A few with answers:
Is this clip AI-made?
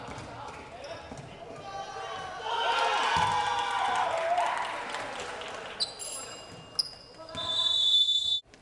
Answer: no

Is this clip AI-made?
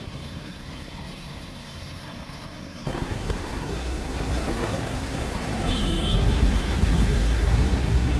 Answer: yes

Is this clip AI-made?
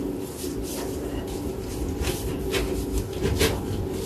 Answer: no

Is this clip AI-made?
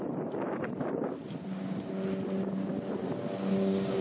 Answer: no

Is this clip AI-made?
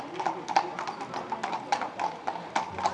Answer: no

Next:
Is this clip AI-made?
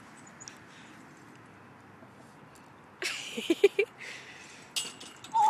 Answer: no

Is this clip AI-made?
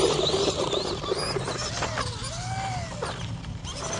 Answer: no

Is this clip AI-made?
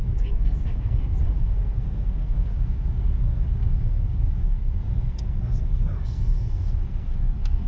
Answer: yes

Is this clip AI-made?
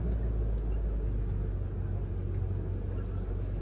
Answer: no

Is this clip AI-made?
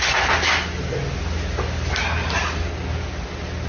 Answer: no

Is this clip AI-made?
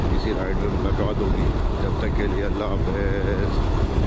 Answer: no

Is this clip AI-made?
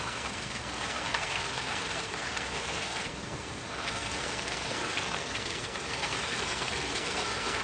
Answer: yes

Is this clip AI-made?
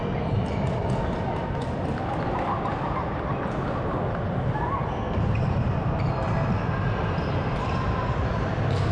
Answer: no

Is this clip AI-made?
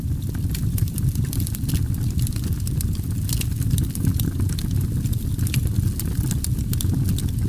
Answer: no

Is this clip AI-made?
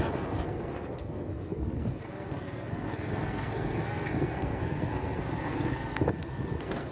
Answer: yes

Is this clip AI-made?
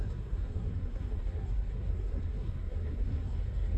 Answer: yes